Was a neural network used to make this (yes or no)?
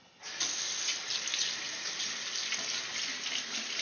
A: no